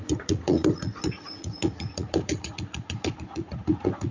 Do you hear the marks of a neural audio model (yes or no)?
yes